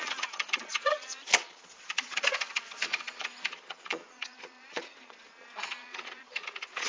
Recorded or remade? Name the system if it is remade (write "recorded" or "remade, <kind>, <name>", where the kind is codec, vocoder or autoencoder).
remade, vocoder, Vocos